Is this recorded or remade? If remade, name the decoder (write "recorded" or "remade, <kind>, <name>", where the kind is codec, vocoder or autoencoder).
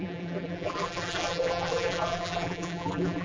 remade, vocoder, BigVGAN v2